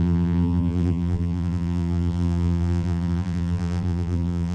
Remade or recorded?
remade